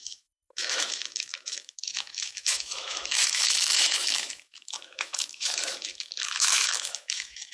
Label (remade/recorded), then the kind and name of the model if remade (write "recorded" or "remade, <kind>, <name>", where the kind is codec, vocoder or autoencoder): remade, autoencoder, DAC-VAE